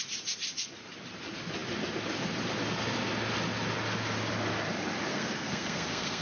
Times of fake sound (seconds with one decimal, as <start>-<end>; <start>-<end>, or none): 5.1-6.2